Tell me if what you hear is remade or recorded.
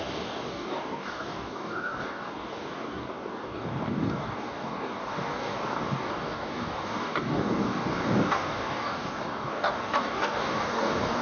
remade